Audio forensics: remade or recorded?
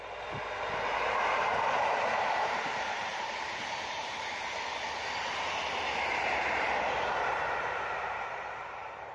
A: remade